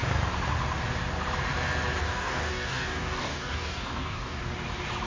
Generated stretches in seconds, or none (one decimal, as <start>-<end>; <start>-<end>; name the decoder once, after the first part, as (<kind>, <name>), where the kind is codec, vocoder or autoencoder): 2.0-4.4 (codec, DAC)